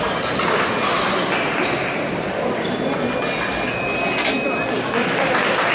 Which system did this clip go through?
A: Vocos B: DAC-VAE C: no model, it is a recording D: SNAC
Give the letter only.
C